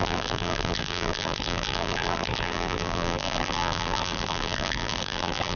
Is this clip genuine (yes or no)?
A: no